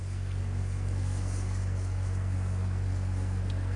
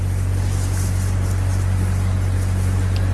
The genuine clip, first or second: second